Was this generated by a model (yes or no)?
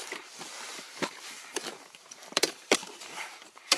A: yes